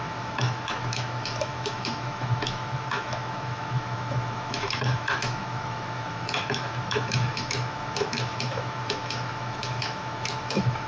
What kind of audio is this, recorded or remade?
remade